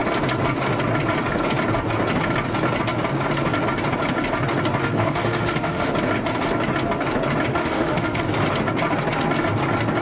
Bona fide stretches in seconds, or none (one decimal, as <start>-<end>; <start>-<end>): 0.0-4.8; 5.9-7.5; 8.2-10.0